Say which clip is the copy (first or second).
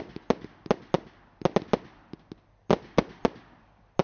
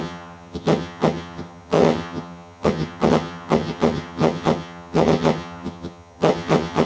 second